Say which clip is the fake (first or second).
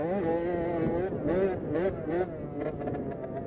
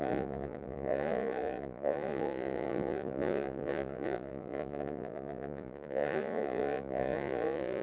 second